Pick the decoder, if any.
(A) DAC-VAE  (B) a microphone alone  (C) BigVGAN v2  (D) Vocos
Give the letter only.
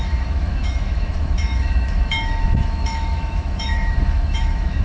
A